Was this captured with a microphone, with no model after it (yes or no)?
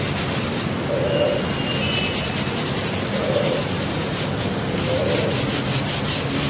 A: yes